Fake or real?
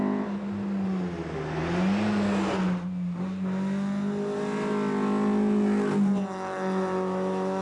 real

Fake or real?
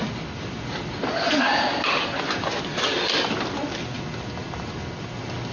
real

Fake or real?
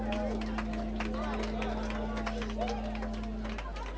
real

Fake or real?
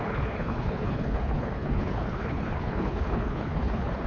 fake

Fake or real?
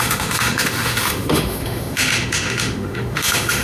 fake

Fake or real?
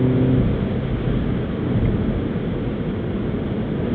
real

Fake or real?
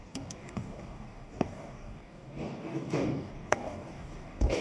fake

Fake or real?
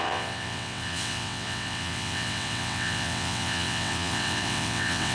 fake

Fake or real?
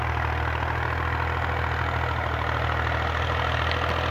real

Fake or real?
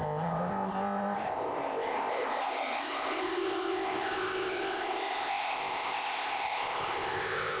fake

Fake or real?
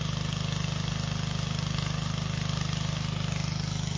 real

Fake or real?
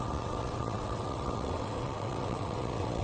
fake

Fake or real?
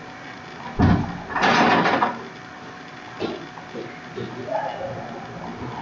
real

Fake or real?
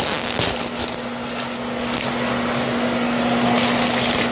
real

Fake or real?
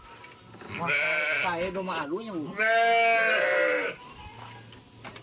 real